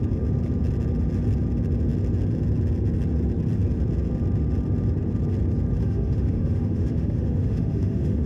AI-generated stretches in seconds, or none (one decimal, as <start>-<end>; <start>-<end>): 5.8-8.3